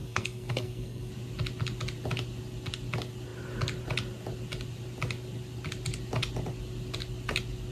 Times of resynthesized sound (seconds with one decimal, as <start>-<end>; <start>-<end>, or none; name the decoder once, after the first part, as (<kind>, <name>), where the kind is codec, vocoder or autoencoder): 0.0-1.1 (codec, SNAC)